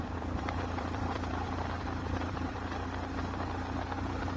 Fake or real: fake